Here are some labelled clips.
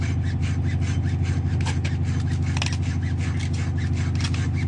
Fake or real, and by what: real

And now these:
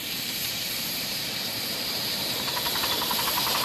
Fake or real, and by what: fake, vocoder, BigVGAN v2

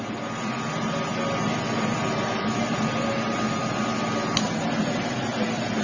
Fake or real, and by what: real